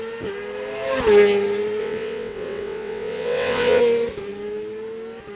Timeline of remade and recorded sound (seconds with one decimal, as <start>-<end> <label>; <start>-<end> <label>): 0.0-1.8 recorded; 1.8-3.8 remade; 3.8-5.4 recorded